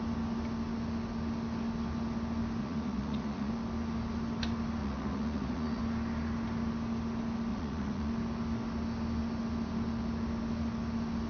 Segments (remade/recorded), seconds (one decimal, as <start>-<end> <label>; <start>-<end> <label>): 0.0-2.6 recorded; 2.6-3.5 remade; 3.5-4.8 recorded; 4.8-5.8 remade; 5.8-7.5 recorded; 7.5-8.1 remade; 8.1-11.3 recorded